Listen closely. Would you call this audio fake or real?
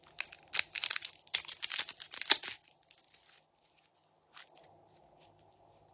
real